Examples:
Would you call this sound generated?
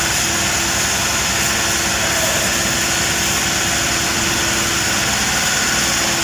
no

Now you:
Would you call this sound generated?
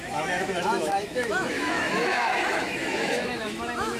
yes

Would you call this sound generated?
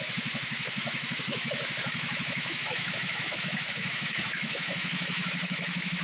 yes